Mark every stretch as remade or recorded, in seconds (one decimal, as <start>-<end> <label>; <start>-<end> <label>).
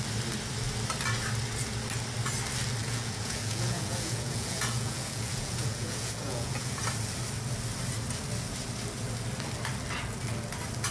0.0-2.8 recorded; 2.8-6.8 remade; 6.8-10.9 recorded